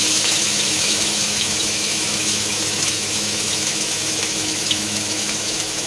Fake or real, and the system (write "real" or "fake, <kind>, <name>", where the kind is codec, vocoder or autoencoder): fake, autoencoder, DAC-VAE